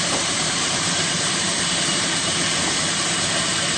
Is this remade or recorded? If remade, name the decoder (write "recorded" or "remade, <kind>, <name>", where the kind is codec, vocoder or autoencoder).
remade, vocoder, BigVGAN v2